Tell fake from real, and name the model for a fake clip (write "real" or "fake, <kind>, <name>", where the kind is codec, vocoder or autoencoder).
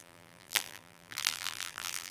fake, vocoder, BigVGAN v2